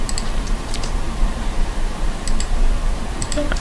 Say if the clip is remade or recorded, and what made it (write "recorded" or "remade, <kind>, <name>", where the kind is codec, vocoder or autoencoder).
remade, vocoder, BigVGAN v2